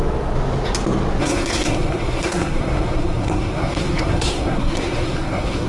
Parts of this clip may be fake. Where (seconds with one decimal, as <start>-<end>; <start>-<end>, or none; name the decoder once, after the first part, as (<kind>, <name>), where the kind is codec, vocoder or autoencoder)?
1.2-5.7 (codec, SNAC)